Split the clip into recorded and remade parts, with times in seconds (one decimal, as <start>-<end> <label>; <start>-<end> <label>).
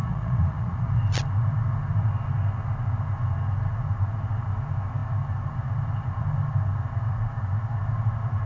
0.0-1.0 remade; 1.0-8.5 recorded